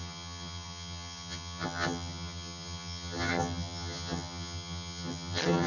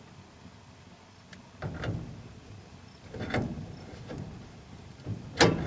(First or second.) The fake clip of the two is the first